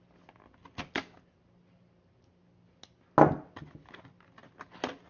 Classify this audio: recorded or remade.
recorded